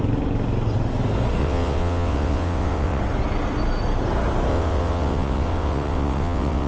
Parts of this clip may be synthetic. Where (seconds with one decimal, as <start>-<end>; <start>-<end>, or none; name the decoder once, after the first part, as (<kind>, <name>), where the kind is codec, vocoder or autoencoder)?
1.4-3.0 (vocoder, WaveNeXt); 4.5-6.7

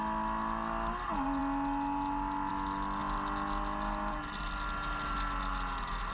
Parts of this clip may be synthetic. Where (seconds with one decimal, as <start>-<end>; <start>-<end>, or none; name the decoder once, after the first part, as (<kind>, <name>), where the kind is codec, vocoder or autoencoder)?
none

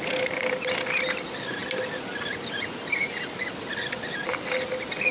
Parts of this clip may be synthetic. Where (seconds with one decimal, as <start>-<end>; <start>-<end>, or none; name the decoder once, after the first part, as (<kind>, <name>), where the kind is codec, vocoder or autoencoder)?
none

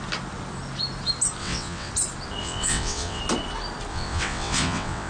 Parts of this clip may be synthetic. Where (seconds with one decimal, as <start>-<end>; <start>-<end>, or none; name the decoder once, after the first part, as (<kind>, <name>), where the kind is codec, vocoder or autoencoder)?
1.4-1.9 (vocoder, WaveNeXt); 2.4-3.2; 3.9-5.1

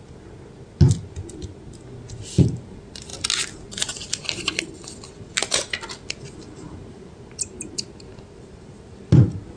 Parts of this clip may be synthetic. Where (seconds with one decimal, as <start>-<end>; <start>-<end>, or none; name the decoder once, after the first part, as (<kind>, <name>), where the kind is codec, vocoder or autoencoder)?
none

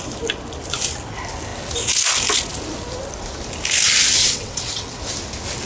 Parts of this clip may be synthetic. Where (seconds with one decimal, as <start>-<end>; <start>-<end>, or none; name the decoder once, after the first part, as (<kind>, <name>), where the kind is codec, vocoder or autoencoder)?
4.2-5.0 (vocoder, WaveNeXt)